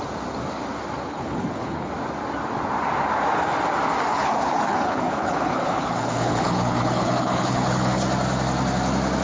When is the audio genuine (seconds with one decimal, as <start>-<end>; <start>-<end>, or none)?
0.0-1.0; 1.9-4.1; 8.0-9.2